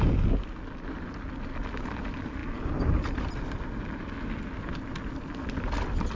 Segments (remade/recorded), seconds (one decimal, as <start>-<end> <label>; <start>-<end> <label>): 0.0-6.2 recorded